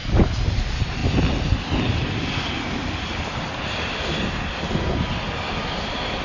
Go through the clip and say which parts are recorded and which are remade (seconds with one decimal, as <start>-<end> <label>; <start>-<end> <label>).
0.0-6.2 recorded